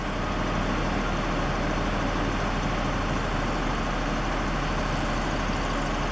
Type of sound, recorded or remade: recorded